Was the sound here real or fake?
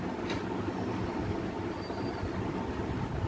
real